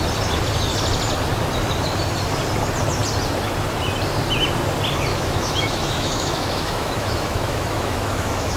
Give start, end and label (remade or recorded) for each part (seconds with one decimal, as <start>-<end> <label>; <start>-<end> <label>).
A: 0.0-5.1 recorded; 5.1-8.6 remade